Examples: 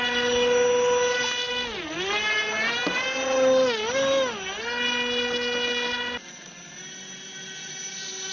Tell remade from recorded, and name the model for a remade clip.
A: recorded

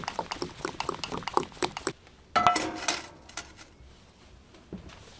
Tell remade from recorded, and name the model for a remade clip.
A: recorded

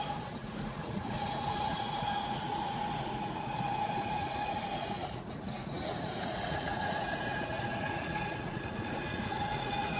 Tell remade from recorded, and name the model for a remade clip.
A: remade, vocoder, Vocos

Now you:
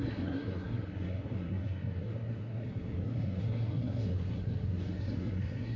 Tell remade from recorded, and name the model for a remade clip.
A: remade, codec, SNAC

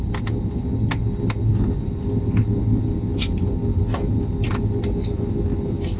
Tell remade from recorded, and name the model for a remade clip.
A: recorded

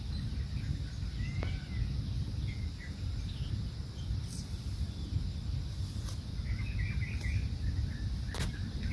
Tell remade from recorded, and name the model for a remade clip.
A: recorded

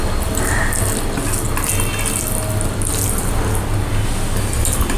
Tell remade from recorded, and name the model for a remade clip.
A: recorded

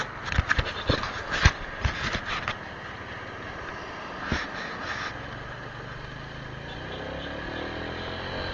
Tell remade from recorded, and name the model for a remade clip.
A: recorded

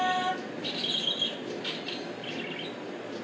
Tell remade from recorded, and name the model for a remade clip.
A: recorded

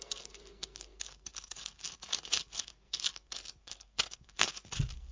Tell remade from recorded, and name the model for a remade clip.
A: remade, codec, SNAC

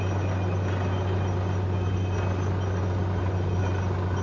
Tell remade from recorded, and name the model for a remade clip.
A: recorded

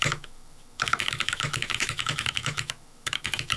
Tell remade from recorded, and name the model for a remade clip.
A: remade, autoencoder, DAC-VAE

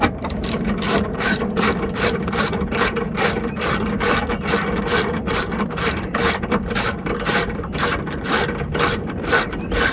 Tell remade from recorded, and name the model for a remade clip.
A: remade, vocoder, BigVGAN v2